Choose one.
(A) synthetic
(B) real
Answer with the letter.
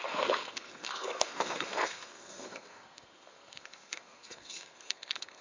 A